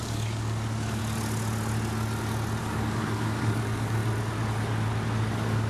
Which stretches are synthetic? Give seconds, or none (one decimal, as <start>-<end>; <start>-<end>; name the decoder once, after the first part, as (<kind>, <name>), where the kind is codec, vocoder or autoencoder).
0.0-1.0 (codec, DAC); 2.6-4.0; 5.3-5.7